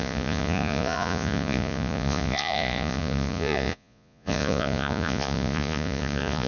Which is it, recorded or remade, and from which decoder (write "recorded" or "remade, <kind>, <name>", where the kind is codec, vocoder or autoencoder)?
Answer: remade, vocoder, Vocos